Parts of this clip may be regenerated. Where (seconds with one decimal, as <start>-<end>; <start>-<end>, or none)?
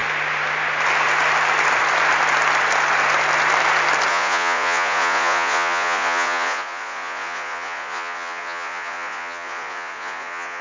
4.1-10.6